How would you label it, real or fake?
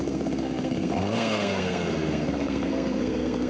fake